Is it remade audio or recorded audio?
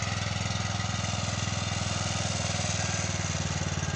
recorded